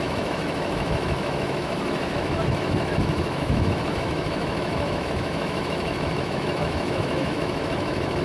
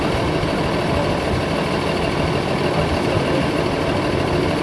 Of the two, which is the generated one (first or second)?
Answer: first